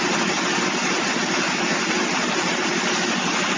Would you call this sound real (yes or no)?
yes